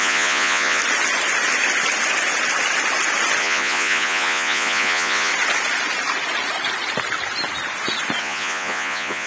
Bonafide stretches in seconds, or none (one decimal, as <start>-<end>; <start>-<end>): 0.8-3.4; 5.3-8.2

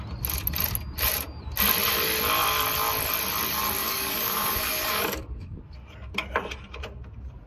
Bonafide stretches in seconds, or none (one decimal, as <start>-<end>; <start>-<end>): 0.0-3.8; 5.6-7.5

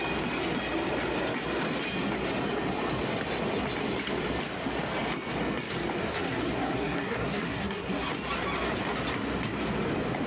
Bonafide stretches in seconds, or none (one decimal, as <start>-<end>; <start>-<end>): 0.0-6.1; 8.1-10.3